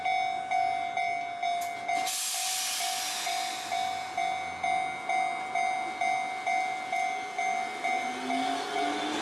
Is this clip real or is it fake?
real